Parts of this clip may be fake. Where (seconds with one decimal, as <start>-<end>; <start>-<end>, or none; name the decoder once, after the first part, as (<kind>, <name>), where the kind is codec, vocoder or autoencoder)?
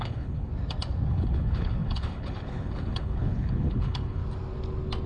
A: 0.0-0.5 (codec, HILCodec); 1.1-4.2